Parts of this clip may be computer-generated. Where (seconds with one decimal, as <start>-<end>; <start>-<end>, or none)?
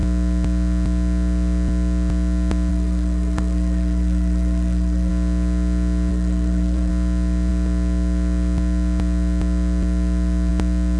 2.7-5.1; 6.1-6.9